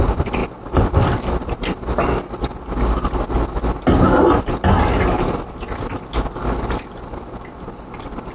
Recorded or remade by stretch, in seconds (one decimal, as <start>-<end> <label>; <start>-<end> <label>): 0.0-8.3 recorded